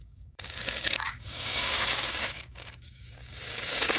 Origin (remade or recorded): remade